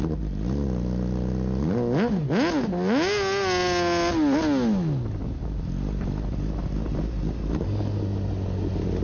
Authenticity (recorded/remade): recorded